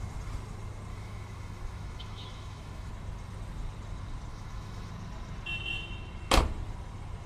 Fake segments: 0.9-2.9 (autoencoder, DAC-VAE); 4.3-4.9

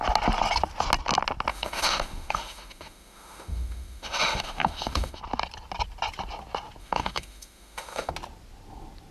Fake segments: 1.5-5.2 (autoencoder, DAC-VAE); 6.8-8.1

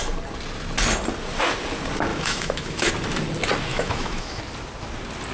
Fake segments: 2.1-2.9 (autoencoder, DAC-VAE); 3.7-4.4